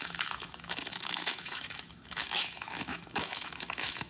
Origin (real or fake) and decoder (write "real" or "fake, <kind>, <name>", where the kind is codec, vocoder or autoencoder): fake, autoencoder, DAC-VAE